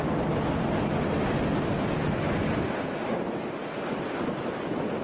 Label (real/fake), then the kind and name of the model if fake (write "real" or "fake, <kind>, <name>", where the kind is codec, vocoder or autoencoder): real